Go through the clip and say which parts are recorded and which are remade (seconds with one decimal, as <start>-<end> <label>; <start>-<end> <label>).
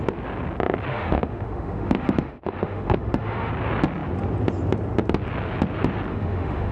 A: 0.0-0.9 recorded; 0.9-3.5 remade; 3.5-6.1 recorded; 6.1-6.7 remade